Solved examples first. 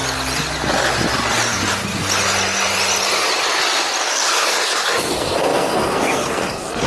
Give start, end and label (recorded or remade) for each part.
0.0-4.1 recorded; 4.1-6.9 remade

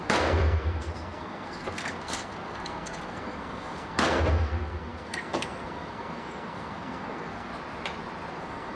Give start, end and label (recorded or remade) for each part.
0.0-7.5 remade; 7.5-8.3 recorded; 8.3-8.8 remade